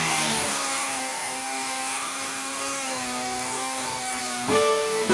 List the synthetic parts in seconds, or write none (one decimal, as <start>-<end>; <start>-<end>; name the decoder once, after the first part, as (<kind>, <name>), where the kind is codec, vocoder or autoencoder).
0.0-5.1 (codec, DAC)